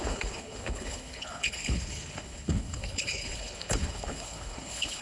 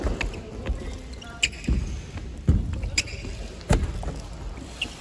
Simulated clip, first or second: first